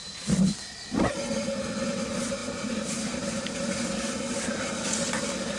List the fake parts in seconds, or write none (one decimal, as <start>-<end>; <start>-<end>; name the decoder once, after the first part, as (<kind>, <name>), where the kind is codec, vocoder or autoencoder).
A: 2.4-3.9 (vocoder, BigVGAN v2)